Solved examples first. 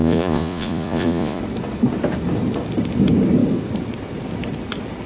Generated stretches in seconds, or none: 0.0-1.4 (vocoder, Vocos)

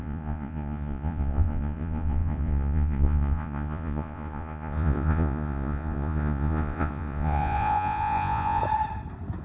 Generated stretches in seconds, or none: 0.0-8.6 (vocoder, Vocos)

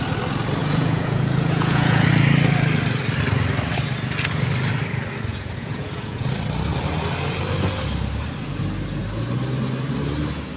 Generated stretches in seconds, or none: 0.6-2.1 (vocoder, Vocos); 5.3-6.3

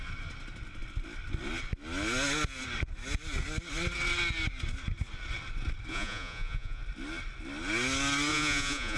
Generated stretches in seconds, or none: 5.9-6.8 (vocoder, Vocos); 8.3-9.0

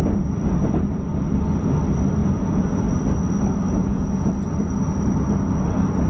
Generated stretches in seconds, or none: 2.2-2.8 (vocoder, Vocos); 3.8-4.3

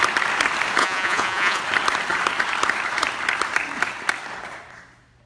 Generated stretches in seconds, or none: 0.8-1.6 (vocoder, Vocos)

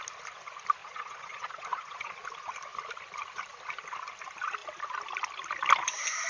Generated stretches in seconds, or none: 0.8-2.1 (vocoder, Vocos)

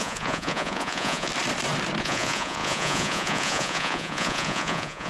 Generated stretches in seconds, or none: 0.0-1.3 (vocoder, Vocos); 2.0-5.1